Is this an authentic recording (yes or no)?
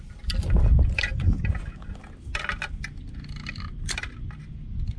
yes